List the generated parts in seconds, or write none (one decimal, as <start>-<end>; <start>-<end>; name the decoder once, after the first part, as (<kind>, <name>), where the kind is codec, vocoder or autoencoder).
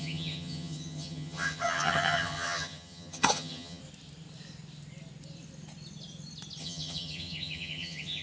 0.0-3.8 (vocoder, HiFi-GAN); 6.6-8.2